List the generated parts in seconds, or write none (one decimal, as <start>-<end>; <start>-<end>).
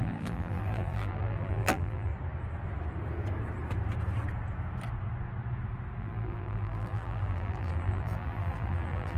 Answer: 0.0-2.1; 6.0-9.2